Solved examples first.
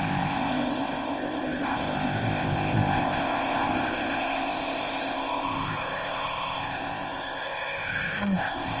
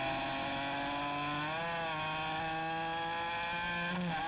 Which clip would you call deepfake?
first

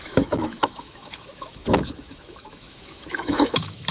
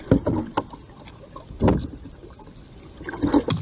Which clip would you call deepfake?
first